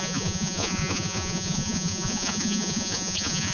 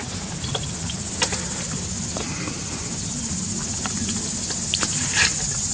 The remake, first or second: first